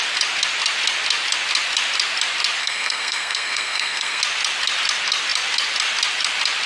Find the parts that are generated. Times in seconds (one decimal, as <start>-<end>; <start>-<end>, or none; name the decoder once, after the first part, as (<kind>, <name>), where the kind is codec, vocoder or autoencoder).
2.6-4.2 (codec, SNAC)